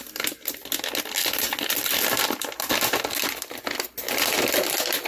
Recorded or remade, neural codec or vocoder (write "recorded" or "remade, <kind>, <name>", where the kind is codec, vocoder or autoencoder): recorded